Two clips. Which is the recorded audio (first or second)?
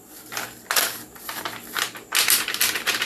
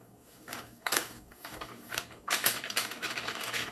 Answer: first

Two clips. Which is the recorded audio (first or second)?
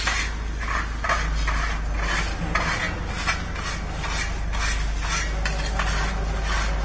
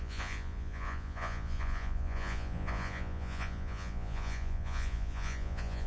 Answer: first